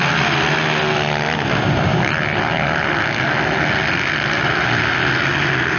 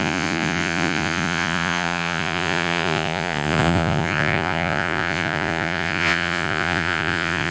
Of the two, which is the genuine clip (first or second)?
first